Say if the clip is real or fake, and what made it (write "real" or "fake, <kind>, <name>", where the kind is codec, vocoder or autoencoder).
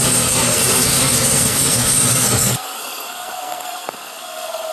fake, codec, SNAC